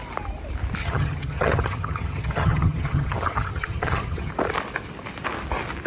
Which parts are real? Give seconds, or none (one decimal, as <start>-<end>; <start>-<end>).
0.0-0.8; 4.3-5.9